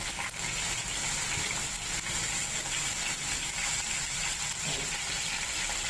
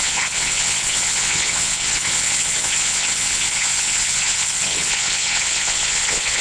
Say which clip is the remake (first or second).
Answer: second